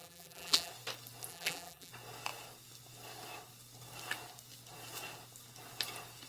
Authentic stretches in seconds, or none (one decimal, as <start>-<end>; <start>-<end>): 0.7-1.3; 1.9-6.3